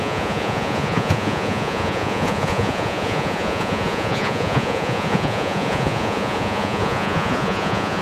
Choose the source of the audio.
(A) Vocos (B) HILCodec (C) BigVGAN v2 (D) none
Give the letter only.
A